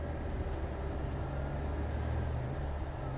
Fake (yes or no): no